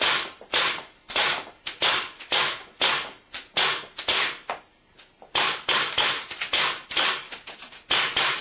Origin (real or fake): real